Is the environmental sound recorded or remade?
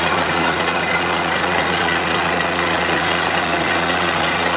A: remade